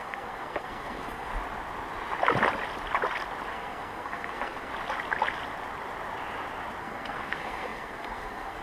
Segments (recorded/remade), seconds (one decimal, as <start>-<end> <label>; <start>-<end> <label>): 0.0-1.3 remade; 1.3-3.5 recorded; 3.5-4.7 remade; 4.7-6.8 recorded; 6.8-8.6 remade